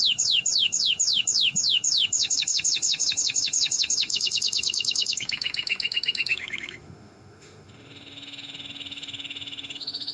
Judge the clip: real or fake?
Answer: fake